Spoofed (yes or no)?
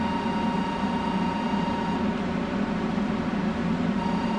no